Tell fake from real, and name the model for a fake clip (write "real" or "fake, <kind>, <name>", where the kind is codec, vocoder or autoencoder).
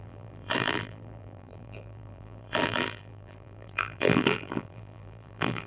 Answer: fake, vocoder, BigVGAN v2